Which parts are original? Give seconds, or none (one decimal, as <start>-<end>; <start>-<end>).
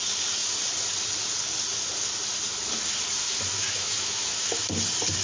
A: 0.0-3.6; 4.6-5.2